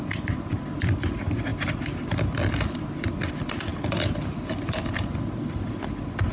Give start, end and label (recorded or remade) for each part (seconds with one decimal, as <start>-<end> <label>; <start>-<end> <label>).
0.0-6.3 recorded